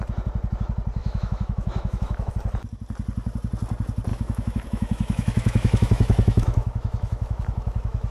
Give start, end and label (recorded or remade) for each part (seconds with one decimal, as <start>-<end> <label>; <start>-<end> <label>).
0.0-1.0 recorded; 1.0-2.3 remade; 2.3-4.1 recorded; 4.1-8.1 remade